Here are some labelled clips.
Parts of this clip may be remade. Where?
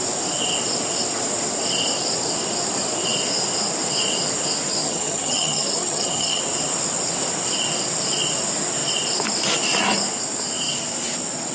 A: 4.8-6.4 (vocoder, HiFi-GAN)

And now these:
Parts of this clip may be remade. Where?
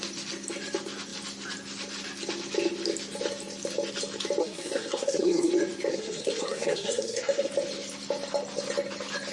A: 4.4-5.5 (codec, SNAC); 5.9-7.5